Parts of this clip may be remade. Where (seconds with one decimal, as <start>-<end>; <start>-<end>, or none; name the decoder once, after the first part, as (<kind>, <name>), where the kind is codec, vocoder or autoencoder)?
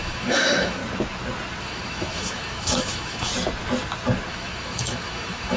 0.0-0.8 (autoencoder, DAC-VAE); 1.6-3.3; 4.3-5.6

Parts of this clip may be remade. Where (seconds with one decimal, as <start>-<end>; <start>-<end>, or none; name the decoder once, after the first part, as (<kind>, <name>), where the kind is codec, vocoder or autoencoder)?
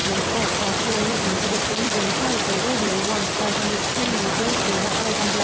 0.0-2.9 (vocoder, BigVGAN v2)